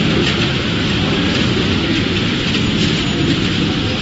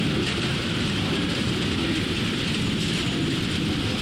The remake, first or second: second